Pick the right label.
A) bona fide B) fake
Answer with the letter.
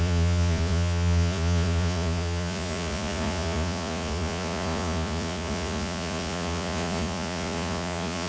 B